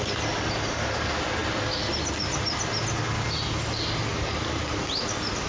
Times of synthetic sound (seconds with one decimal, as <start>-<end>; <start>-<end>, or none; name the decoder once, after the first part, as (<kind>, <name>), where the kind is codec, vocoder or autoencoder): none